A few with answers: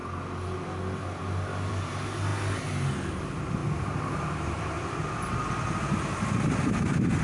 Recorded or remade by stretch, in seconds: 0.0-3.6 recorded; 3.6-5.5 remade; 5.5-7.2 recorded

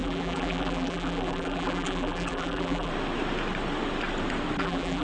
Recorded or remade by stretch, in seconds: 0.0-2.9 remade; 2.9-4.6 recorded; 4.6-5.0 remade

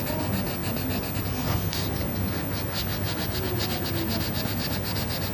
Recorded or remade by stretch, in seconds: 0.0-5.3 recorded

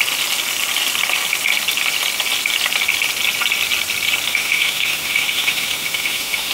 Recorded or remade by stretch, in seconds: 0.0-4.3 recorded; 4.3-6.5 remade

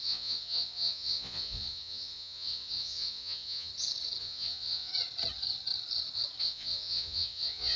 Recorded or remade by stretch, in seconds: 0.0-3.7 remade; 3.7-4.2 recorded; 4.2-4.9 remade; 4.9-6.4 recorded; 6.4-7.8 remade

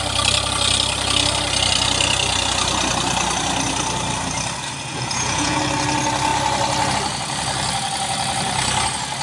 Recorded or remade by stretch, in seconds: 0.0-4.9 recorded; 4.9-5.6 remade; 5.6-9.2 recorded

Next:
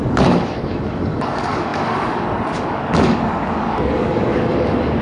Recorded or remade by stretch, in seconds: 0.0-5.0 remade

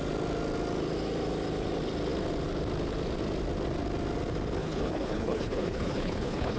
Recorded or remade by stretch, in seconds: 0.0-4.6 recorded; 4.6-6.6 remade